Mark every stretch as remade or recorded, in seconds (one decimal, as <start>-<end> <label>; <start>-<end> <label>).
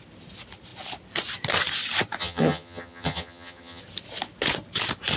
0.0-2.2 recorded; 2.2-3.8 remade; 3.8-5.2 recorded